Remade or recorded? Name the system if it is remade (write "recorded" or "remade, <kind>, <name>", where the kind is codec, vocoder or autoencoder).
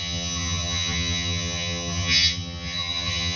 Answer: remade, vocoder, HiFi-GAN